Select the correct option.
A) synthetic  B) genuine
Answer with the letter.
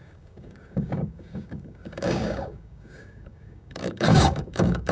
A